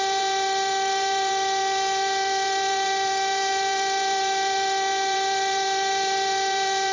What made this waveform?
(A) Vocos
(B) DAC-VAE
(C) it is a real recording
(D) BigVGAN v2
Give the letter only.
D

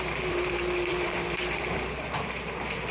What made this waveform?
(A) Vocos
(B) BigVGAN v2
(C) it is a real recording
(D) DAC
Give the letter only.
B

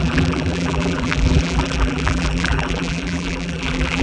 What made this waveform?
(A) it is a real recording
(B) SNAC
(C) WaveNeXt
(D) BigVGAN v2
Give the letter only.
D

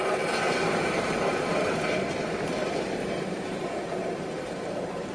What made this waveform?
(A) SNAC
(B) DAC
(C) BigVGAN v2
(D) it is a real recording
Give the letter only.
C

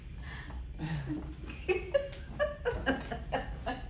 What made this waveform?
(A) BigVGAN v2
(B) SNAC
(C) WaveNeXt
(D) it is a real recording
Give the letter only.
D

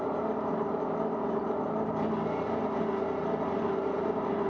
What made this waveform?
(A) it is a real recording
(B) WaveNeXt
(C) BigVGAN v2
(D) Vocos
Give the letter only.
C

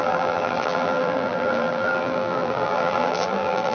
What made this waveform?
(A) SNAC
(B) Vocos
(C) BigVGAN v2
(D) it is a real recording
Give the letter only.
C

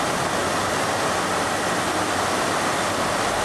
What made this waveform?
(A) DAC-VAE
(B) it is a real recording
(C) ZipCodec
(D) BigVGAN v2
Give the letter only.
B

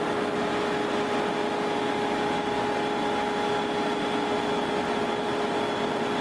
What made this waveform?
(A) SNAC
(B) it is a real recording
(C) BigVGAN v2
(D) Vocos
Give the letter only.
B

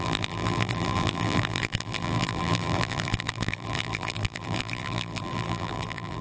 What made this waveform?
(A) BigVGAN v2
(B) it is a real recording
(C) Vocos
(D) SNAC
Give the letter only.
A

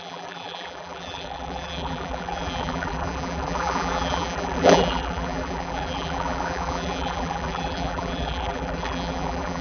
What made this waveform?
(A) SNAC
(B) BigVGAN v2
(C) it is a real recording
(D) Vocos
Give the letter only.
B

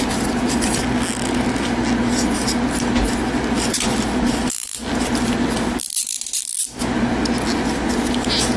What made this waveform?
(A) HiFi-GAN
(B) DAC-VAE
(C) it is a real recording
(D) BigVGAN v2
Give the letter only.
C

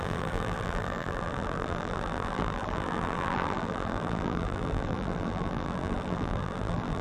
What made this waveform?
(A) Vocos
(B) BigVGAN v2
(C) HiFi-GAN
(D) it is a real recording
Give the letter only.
B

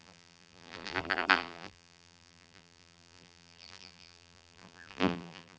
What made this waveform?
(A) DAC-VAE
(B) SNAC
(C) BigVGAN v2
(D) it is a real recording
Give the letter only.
C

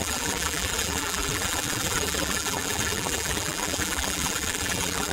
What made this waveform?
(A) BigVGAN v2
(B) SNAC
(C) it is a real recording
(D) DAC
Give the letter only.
A